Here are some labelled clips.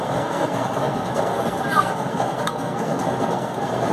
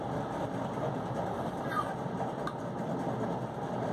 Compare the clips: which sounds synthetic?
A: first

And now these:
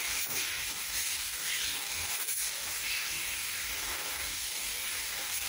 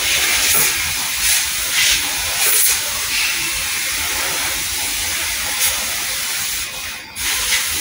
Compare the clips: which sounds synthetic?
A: first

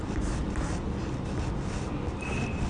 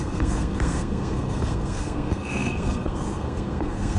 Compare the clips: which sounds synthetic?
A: second